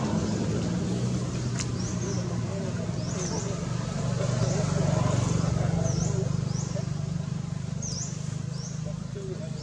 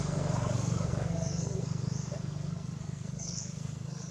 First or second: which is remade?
second